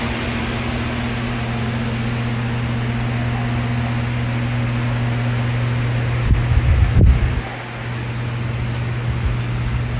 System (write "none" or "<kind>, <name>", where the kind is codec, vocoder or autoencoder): none